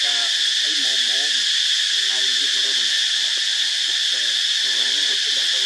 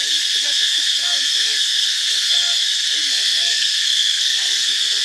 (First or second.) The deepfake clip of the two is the second